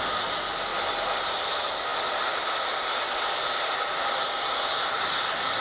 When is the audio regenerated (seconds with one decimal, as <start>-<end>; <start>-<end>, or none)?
none